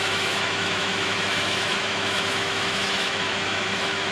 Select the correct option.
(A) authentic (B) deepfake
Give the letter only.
B